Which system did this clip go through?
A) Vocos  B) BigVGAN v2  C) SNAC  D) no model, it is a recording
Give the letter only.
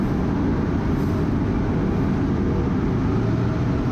D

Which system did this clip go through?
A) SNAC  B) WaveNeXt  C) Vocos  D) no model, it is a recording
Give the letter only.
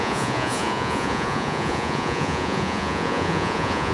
C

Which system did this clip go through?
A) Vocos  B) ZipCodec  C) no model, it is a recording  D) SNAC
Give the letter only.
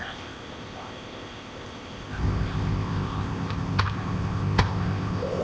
B